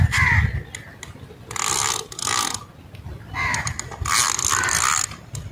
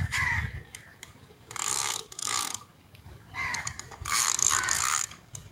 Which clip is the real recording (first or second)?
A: first